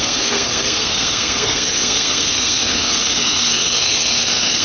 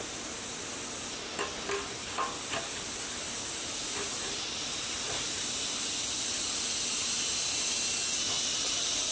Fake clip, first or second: first